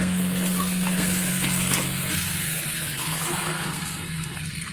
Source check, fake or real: fake